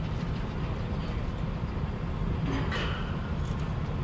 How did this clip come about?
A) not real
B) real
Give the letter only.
B